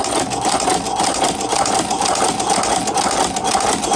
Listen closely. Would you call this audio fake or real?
real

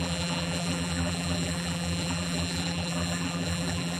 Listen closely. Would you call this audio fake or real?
fake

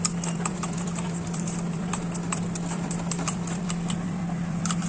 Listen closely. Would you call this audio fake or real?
fake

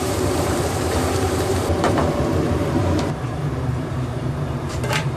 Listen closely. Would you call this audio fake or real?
fake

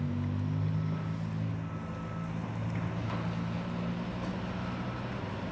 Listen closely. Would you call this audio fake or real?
real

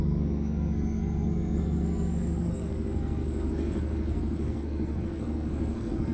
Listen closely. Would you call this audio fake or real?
fake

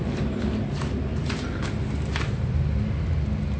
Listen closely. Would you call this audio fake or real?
real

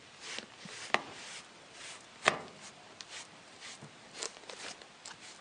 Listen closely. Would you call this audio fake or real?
fake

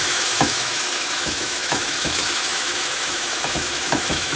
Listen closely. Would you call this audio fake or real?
fake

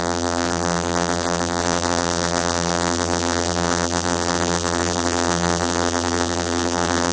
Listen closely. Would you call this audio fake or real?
fake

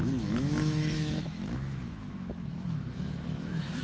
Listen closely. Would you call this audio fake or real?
fake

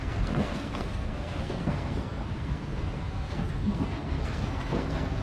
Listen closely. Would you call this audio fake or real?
fake